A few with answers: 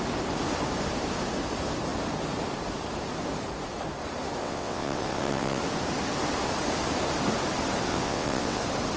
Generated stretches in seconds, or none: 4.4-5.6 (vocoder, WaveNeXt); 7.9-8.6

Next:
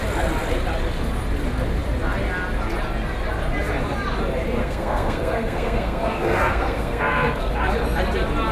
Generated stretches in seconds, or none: 4.6-7.5 (codec, SNAC)

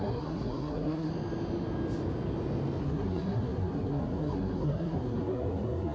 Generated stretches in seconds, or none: 0.0-1.1 (codec, SNAC); 2.8-5.9

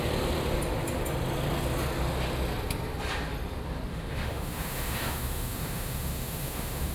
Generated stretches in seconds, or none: 3.9-6.9 (autoencoder, DAC-VAE)

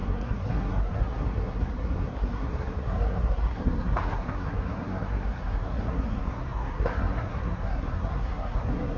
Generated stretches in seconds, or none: 0.0-9.0 (codec, SNAC)

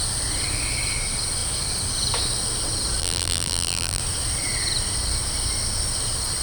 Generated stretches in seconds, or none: 3.0-4.0 (vocoder, BigVGAN v2)

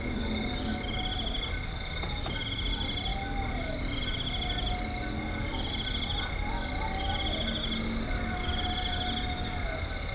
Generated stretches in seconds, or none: none

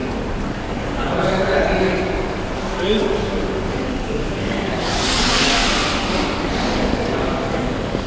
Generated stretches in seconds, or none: 0.5-5.6 (codec, DAC); 6.5-8.1